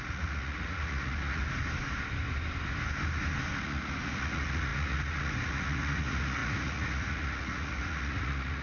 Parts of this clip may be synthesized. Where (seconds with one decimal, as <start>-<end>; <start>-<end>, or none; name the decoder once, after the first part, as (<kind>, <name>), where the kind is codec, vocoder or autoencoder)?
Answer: 0.0-1.4 (vocoder, Vocos); 3.6-8.6